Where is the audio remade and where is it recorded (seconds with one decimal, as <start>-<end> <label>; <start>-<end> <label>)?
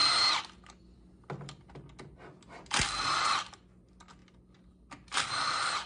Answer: 0.0-5.9 recorded